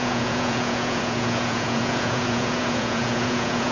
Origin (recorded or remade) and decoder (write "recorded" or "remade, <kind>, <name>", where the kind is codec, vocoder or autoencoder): remade, vocoder, Vocos